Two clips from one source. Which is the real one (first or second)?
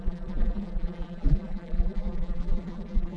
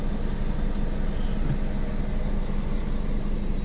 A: second